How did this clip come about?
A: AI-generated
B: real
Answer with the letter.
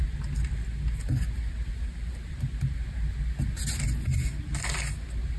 B